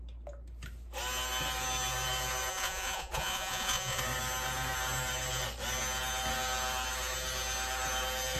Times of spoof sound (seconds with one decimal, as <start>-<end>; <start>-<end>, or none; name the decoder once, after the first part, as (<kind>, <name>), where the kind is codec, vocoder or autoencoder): 2.5-4.0 (vocoder, Vocos)